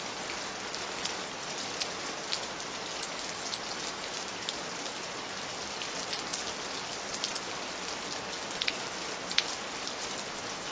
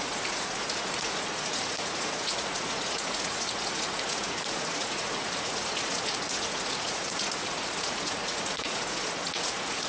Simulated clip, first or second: second